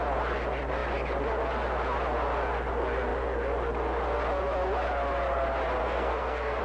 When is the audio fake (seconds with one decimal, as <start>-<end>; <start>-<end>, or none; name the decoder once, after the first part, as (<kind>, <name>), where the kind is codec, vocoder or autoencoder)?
5.8-6.6 (codec, SNAC)